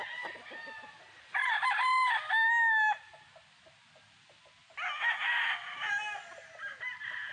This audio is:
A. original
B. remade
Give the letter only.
A